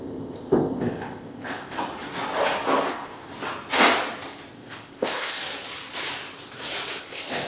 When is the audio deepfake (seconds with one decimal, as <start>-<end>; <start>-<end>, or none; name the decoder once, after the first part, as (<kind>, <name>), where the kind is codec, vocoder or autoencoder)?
0.0-1.8 (codec, ZipCodec); 2.9-3.3; 4.5-5.4; 7.0-7.5